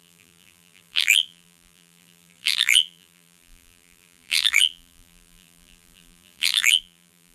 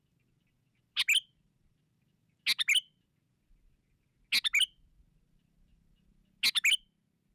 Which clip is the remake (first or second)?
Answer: first